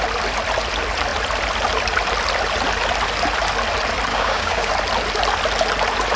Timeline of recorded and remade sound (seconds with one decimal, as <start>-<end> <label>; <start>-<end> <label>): 0.0-4.1 recorded; 4.1-4.7 remade; 4.7-6.2 recorded